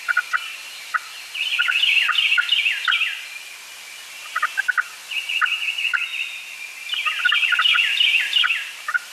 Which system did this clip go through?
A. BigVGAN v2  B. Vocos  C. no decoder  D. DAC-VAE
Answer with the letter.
C